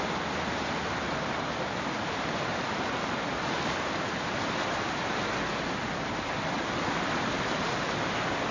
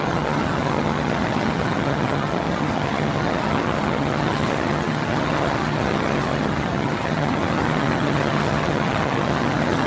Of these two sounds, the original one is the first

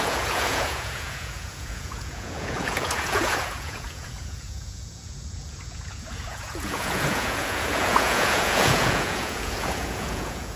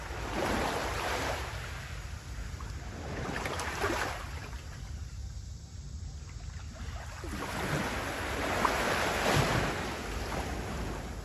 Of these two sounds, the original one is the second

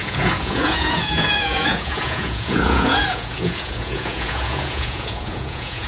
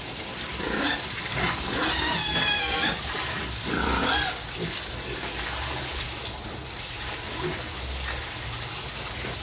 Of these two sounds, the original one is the second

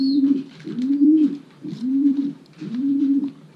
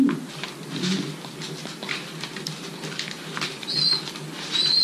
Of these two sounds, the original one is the second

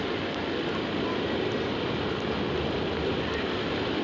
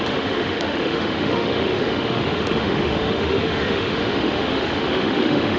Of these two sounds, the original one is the first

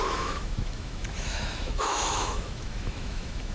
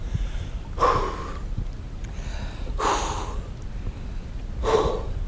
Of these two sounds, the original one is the second